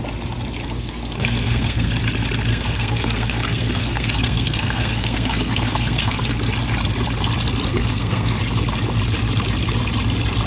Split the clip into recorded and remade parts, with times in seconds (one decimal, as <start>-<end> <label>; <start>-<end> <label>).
0.0-0.6 recorded; 0.6-1.9 remade; 1.9-2.5 recorded; 2.5-6.4 remade; 6.4-7.7 recorded; 7.7-8.4 remade; 8.4-10.5 recorded